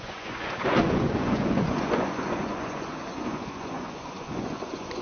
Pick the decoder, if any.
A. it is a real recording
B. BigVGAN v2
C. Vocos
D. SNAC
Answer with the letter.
C